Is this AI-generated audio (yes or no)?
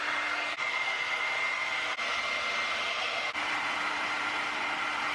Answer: no